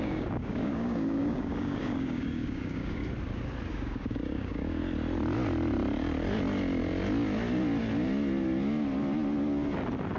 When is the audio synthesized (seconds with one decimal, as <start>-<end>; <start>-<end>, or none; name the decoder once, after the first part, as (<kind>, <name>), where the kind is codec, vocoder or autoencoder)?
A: 0.0-3.0 (codec, DAC); 3.7-4.8